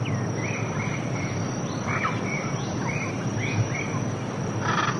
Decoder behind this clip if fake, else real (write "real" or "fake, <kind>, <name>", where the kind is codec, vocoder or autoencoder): fake, vocoder, BigVGAN v2